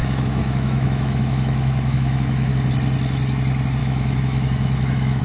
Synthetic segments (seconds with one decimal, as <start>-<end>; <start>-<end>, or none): 0.0-2.5; 3.8-5.2